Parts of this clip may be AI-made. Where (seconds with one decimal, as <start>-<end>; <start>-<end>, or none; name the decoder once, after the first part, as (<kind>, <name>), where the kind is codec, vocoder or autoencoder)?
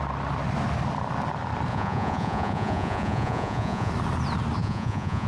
1.7-3.9 (vocoder, Vocos); 4.6-5.3